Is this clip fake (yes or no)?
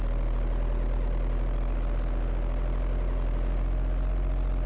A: no